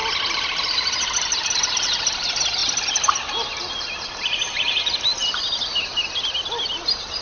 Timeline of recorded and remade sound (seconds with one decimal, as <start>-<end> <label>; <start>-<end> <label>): 0.0-7.2 recorded